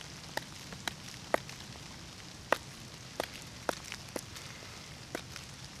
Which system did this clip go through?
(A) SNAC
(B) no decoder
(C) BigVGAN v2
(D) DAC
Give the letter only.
B